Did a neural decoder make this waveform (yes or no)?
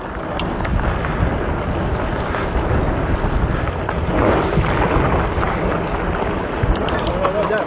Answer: no